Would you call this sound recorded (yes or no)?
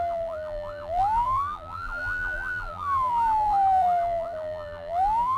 no